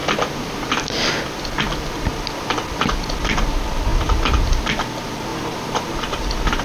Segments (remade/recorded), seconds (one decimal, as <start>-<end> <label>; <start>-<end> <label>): 0.0-5.3 recorded; 5.3-6.6 remade